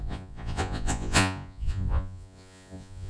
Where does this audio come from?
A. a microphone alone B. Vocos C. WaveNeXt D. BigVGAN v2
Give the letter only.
B